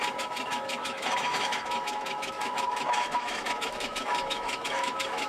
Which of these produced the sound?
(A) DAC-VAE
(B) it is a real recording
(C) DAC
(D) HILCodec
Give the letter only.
A